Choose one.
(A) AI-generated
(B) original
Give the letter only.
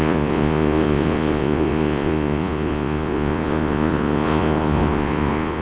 A